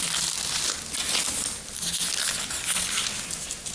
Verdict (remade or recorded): recorded